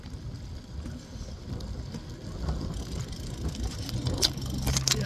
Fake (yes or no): no